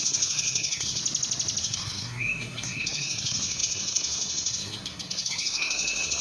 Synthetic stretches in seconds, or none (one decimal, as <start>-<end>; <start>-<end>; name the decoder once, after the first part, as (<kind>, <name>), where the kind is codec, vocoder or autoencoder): 0.0-1.0 (codec, SNAC); 1.6-6.2